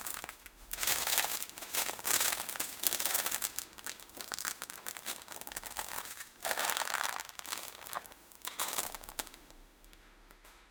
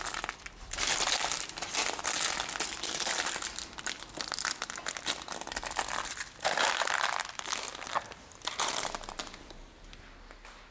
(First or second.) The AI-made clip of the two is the first